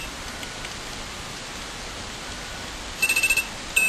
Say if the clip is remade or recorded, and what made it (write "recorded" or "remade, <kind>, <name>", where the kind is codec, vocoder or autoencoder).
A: remade, vocoder, BigVGAN v2